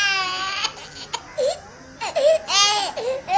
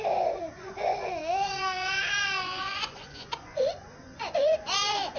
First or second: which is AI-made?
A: second